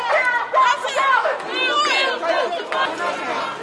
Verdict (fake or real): real